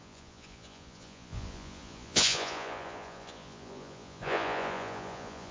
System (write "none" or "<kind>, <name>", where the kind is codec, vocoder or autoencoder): vocoder, Vocos